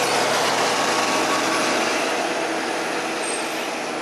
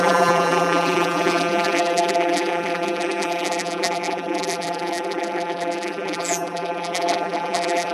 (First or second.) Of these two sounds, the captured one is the first